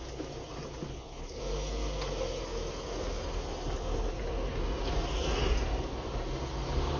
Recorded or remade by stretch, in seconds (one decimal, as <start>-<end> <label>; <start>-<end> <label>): 0.0-0.9 recorded; 0.9-1.4 remade; 1.4-7.0 recorded